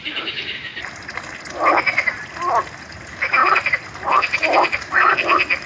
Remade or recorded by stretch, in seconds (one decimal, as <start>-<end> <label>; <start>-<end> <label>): 0.0-0.7 remade; 0.7-2.9 recorded; 2.9-5.7 remade